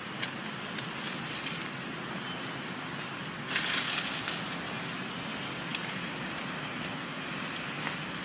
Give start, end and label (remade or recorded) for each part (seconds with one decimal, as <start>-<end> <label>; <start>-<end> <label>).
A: 0.0-8.2 recorded